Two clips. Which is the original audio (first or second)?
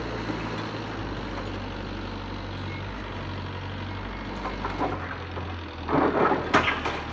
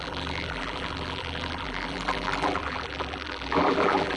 first